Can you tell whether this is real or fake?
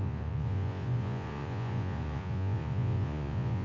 fake